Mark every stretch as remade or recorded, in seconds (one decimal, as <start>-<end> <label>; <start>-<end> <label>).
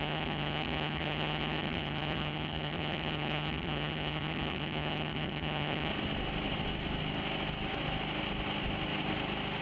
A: 0.0-5.9 remade; 5.9-9.6 recorded